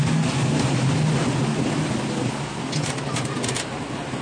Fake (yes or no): no